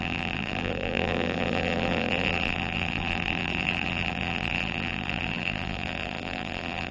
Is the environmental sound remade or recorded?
remade